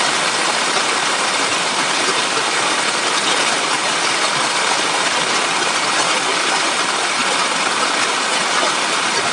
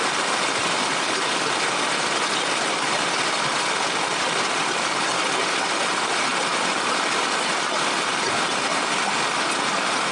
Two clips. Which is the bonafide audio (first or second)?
second